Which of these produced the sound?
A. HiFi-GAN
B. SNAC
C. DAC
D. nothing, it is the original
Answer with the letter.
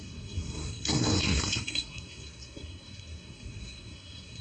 B